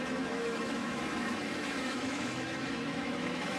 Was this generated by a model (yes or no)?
yes